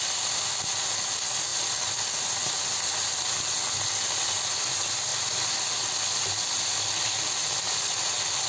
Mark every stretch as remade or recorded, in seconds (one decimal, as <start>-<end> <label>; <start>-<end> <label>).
0.0-8.5 recorded